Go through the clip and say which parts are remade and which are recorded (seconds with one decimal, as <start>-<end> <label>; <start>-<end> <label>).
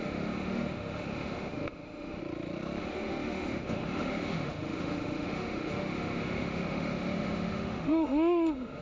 0.0-2.2 remade; 2.2-2.8 recorded; 2.8-8.8 remade